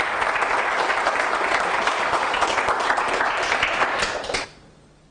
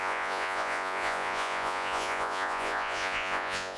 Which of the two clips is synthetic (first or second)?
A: second